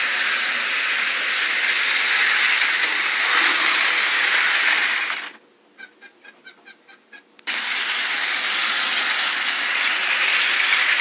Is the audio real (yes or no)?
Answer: yes